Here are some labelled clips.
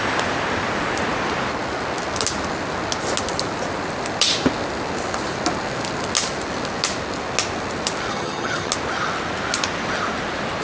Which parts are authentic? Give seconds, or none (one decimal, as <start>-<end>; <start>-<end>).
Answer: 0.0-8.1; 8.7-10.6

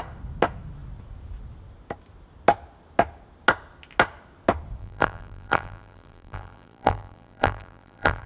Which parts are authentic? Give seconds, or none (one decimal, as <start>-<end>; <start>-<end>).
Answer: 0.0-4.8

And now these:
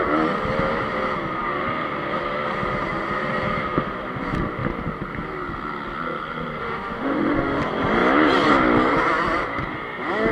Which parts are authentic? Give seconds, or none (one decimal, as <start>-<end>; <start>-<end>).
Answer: 0.0-6.6; 7.6-10.3